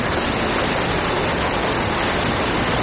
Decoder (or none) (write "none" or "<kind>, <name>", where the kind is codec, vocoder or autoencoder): none